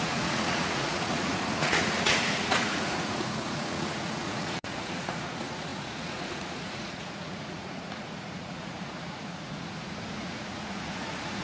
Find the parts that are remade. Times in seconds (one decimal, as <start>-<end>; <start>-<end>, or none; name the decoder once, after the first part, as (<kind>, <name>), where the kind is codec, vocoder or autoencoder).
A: 0.0-11.4 (vocoder, Vocos)